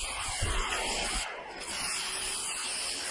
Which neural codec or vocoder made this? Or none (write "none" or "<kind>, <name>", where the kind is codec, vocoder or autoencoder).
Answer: none